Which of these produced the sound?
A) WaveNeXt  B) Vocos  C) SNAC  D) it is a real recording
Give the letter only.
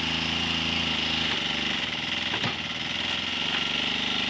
D